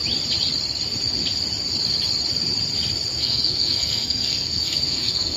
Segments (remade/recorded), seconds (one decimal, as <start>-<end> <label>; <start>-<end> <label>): 0.0-3.2 recorded; 3.2-5.4 remade